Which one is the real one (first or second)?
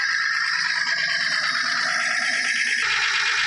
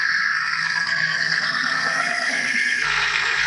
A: first